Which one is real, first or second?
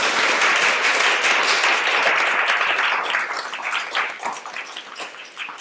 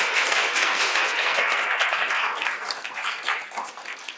first